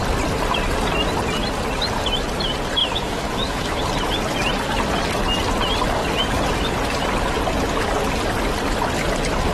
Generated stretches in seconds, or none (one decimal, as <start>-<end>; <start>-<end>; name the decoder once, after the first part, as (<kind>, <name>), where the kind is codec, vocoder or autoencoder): 2.8-3.8 (autoencoder, DAC-VAE)